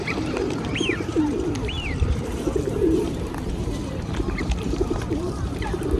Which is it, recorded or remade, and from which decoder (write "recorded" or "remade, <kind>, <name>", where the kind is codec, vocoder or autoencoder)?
remade, vocoder, BigVGAN v2